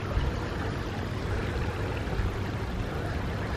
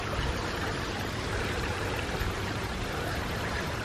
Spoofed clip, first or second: second